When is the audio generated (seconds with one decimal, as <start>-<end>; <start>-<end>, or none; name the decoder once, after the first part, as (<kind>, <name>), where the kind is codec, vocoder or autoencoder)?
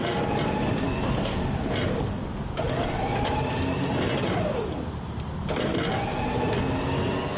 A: 0.0-3.6 (vocoder, BigVGAN v2); 5.4-6.0